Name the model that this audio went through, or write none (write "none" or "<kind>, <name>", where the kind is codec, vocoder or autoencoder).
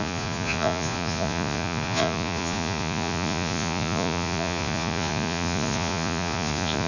vocoder, Vocos